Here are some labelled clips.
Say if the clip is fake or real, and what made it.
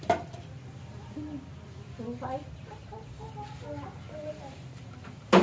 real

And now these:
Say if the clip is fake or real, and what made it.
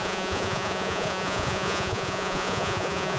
fake, vocoder, Vocos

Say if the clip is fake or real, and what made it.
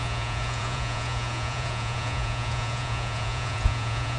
fake, vocoder, Vocos